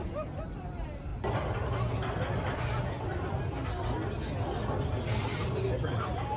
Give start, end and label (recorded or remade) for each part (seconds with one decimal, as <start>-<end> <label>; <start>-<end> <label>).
0.0-6.4 recorded